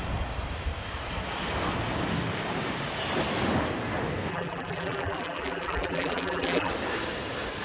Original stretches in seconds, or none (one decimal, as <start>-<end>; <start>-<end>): 0.0-4.3; 6.7-7.6